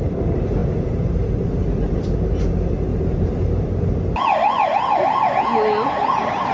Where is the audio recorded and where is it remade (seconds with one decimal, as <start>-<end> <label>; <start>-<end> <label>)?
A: 0.0-2.9 recorded; 2.9-3.8 remade; 3.8-6.5 recorded